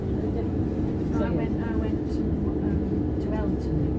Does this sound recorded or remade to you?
recorded